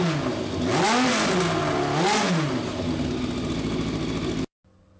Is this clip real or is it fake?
real